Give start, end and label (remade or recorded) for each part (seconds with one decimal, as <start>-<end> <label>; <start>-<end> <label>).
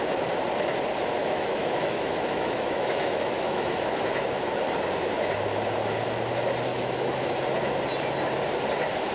0.0-1.2 recorded; 1.2-4.4 remade; 4.4-6.7 recorded; 6.7-7.4 remade; 7.4-9.1 recorded